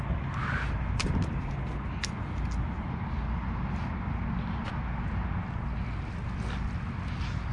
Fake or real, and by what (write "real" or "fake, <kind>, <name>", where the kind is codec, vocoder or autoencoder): real